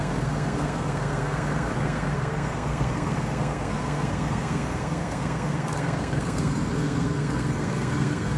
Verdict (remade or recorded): remade